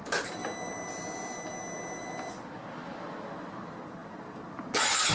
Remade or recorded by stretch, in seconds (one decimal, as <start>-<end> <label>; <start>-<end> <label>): 0.0-5.1 recorded